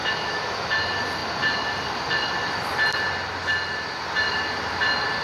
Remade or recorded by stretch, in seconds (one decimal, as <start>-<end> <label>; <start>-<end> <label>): 0.0-0.7 remade; 0.7-5.2 recorded

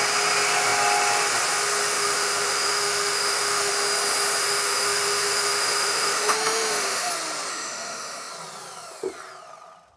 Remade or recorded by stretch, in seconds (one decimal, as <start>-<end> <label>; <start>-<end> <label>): 0.0-1.9 recorded; 1.9-3.7 remade; 3.7-4.4 recorded; 4.4-7.1 remade; 7.1-7.5 recorded; 7.5-8.3 remade; 8.3-10.0 recorded

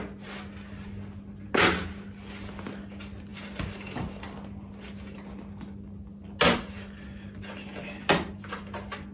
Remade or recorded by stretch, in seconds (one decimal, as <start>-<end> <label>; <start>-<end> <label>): 0.0-9.1 recorded